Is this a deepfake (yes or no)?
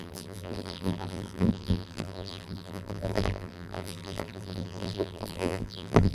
yes